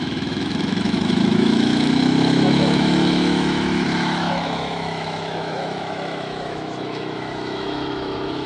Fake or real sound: fake